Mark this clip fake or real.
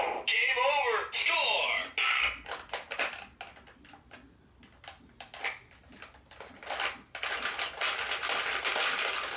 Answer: real